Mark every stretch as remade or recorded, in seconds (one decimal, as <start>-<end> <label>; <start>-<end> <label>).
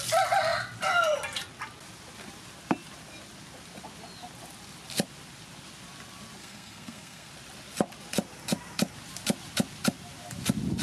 0.0-6.4 recorded; 6.4-7.3 remade; 7.3-10.8 recorded